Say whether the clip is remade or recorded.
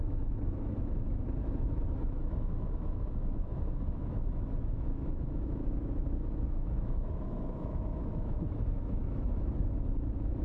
remade